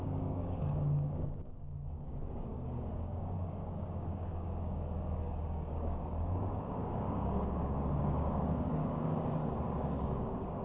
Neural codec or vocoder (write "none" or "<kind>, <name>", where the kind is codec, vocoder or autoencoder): codec, DAC